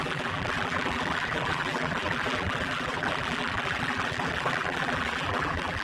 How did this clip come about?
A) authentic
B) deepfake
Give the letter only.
B